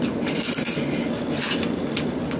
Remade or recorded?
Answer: recorded